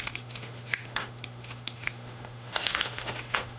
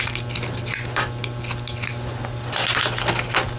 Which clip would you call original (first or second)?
second